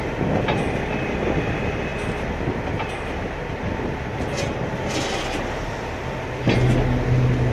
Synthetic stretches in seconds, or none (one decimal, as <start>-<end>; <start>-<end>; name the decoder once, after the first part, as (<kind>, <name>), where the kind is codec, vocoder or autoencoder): none

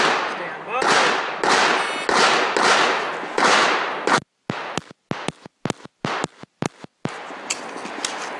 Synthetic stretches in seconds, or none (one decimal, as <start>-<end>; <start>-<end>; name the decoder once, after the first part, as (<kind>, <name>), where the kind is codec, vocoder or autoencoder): none

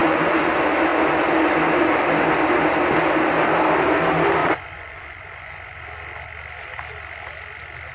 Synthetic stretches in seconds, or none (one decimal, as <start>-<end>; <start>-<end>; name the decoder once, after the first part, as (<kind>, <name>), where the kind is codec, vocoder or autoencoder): 0.0-0.5 (vocoder, Vocos); 4.4-5.8

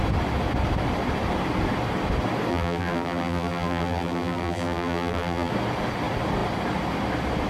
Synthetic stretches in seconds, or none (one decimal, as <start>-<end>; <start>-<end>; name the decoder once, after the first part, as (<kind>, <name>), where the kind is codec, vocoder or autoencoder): 2.5-5.5 (vocoder, BigVGAN v2)

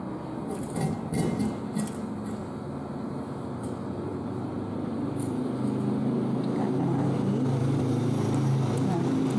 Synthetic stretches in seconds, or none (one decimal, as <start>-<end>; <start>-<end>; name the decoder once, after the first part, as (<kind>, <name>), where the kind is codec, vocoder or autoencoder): 4.1-5.4 (vocoder, BigVGAN v2); 6.0-6.5; 7.6-8.1